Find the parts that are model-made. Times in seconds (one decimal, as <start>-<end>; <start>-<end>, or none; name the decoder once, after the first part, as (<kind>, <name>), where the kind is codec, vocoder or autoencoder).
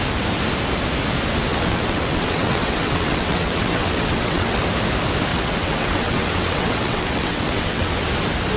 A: 1.5-4.6 (vocoder, WaveNeXt); 5.3-7.9